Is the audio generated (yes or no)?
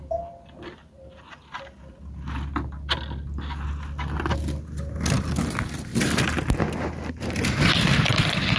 no